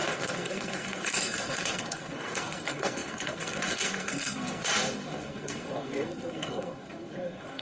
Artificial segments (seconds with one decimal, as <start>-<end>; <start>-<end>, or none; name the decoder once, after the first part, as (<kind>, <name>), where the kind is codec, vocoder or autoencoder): 0.0-7.6 (codec, SNAC)